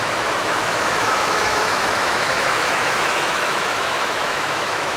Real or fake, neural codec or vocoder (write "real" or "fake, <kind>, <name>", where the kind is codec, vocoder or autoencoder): fake, autoencoder, DAC-VAE